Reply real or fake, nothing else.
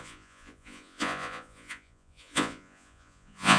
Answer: fake